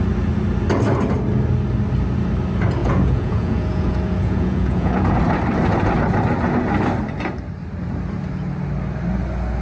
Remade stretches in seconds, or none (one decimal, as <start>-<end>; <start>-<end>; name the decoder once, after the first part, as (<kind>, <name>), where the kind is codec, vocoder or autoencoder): 2.8-5.2 (vocoder, Vocos)